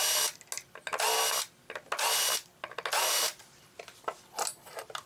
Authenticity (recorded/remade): recorded